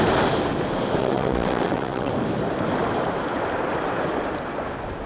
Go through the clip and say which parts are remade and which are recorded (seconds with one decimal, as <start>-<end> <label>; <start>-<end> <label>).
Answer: 0.0-1.0 recorded; 1.0-2.1 remade; 2.1-5.1 recorded